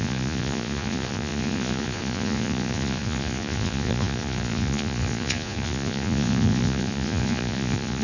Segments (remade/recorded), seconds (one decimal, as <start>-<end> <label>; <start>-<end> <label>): 0.0-8.0 remade